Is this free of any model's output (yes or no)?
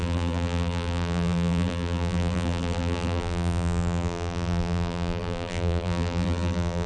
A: no